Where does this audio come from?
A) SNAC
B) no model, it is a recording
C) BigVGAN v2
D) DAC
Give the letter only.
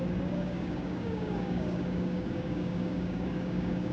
D